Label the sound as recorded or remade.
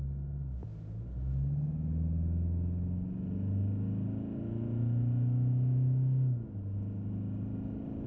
recorded